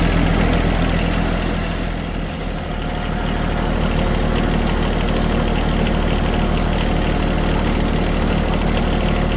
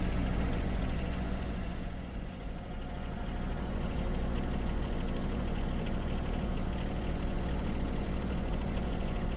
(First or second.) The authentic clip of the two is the first